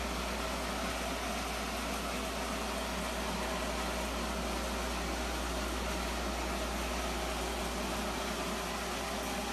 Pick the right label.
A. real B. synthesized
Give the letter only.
A